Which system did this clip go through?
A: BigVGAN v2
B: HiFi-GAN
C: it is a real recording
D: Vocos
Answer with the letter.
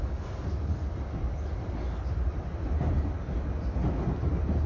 C